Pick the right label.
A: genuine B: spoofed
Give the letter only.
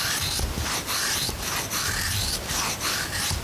A